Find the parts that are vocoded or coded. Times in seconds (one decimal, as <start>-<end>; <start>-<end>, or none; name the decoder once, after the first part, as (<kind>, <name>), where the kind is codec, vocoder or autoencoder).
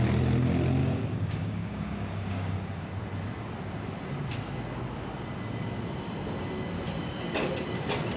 0.8-2.9 (codec, DAC)